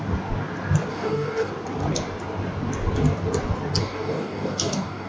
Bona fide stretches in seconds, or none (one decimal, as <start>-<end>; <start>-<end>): 0.0-0.9; 1.5-3.8